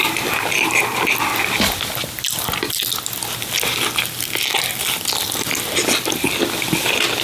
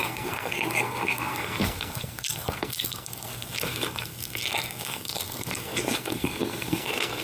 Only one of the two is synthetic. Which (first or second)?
second